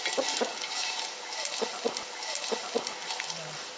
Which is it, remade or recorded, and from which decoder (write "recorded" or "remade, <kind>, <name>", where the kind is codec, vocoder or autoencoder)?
recorded